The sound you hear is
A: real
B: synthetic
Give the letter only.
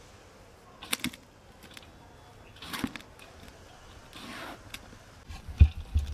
A